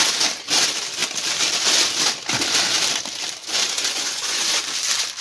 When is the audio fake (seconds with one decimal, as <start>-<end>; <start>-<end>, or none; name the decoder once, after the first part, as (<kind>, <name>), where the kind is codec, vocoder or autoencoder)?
3.4-4.6 (vocoder, Vocos)